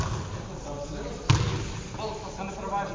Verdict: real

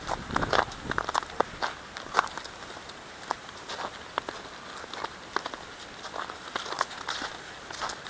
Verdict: real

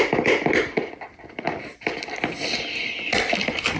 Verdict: real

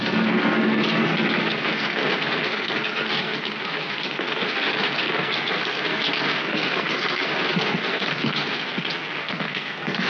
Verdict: fake